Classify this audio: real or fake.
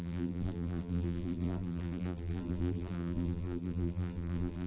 fake